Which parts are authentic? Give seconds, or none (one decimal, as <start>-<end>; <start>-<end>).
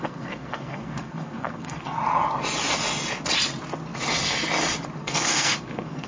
2.0-5.0